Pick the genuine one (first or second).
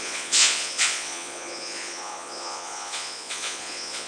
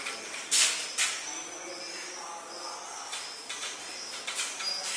second